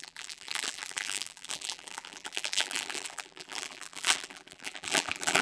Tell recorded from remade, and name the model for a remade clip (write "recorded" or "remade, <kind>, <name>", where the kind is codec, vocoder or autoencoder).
remade, vocoder, BigVGAN v2